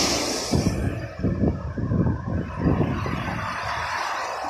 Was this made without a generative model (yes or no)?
yes